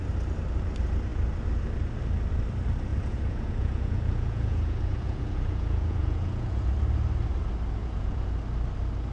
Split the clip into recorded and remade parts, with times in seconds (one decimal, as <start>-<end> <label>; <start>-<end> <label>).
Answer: 0.0-2.9 recorded; 2.9-6.7 remade; 6.7-7.8 recorded; 7.8-8.3 remade; 8.3-9.1 recorded